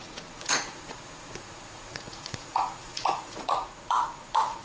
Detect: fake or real fake